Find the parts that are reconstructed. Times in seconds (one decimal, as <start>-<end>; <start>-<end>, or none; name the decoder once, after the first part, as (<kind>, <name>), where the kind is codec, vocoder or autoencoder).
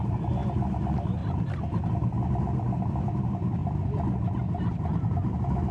0.0-1.2 (vocoder, BigVGAN v2); 2.8-3.6; 4.4-5.7